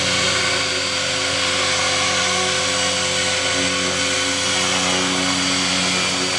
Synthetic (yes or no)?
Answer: no